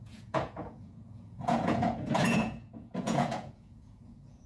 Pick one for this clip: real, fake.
fake